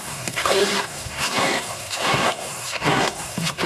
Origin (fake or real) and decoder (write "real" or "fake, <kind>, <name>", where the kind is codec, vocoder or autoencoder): fake, codec, SNAC